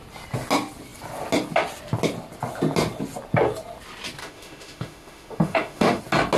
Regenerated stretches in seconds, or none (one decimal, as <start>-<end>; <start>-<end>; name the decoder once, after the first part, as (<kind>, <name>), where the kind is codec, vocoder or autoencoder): 4.2-6.0 (autoencoder, DAC-VAE)